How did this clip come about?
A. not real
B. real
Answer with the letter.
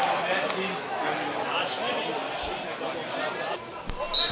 B